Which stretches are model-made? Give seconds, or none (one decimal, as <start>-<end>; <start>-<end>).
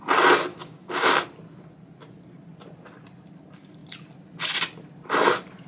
0.5-1.2